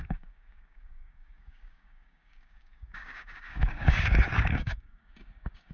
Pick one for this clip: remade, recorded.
remade